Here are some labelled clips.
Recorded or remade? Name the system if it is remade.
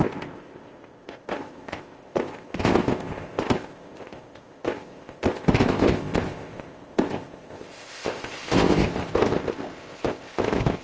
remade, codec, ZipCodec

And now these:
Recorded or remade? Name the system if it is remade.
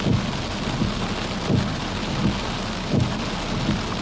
recorded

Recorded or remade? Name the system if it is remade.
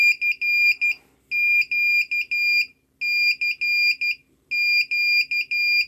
recorded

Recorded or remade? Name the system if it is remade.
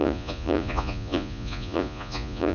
remade, vocoder, Vocos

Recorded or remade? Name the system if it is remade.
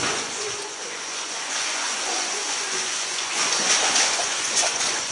remade, vocoder, Vocos